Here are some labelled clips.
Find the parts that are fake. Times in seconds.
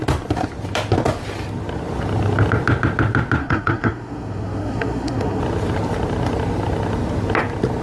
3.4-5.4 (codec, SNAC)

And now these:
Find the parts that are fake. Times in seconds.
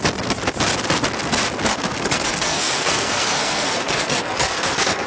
1.7-5.1 (codec, SNAC)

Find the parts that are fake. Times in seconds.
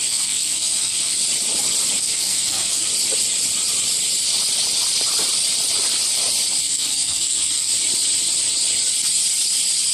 0.0-1.2 (codec, SNAC); 2.0-2.9; 6.6-7.7